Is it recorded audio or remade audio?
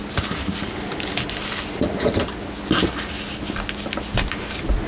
recorded